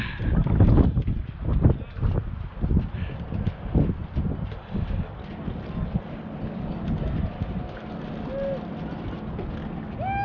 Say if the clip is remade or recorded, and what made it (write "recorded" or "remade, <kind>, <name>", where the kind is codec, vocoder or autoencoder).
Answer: recorded